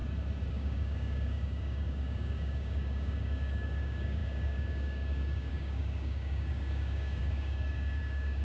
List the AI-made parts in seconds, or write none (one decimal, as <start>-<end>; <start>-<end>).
0.5-8.4